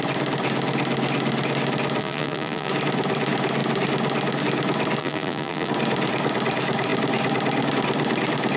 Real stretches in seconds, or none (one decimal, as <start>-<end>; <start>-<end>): 0.0-2.0; 2.7-5.0; 5.7-8.6